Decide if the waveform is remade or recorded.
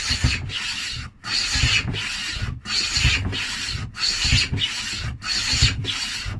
recorded